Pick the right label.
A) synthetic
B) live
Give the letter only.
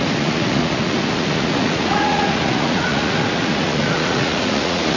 A